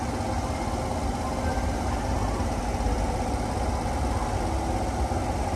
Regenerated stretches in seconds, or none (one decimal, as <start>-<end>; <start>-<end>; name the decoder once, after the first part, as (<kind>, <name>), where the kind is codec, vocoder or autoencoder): 1.5-2.6 (vocoder, BigVGAN v2)